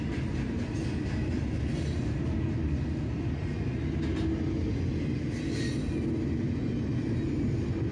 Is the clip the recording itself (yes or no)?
yes